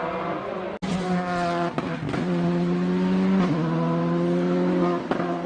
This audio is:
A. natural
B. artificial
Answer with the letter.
A